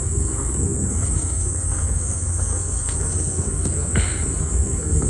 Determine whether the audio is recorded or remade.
remade